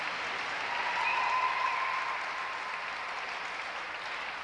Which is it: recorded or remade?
recorded